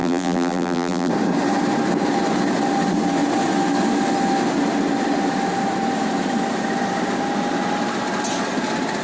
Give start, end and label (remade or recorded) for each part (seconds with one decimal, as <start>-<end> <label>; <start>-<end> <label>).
0.0-1.1 remade; 1.1-9.0 recorded